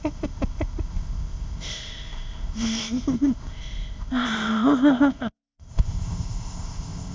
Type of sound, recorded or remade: remade